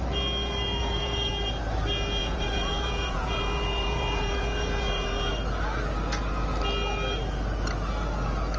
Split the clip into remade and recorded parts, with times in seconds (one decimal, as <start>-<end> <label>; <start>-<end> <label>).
0.0-0.8 recorded; 0.8-1.3 remade; 1.3-2.2 recorded; 2.2-5.3 remade; 5.3-8.6 recorded